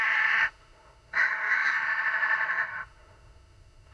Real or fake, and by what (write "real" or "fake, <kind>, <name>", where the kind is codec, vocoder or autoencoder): fake, autoencoder, DAC-VAE